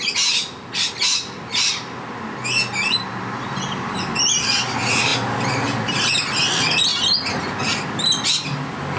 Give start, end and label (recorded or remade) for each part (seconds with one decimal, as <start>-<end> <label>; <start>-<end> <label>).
0.0-9.0 recorded